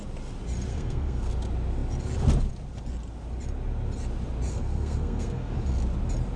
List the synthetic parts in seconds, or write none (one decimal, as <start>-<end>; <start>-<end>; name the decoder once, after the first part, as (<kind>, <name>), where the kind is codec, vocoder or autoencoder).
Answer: 0.7-1.3 (codec, SNAC); 4.5-5.5